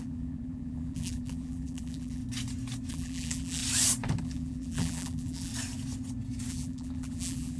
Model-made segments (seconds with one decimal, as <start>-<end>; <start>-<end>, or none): 0.0-2.2; 2.9-3.6; 4.2-5.5; 6.5-7.6